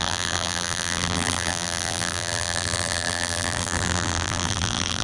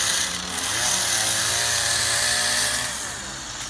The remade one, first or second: first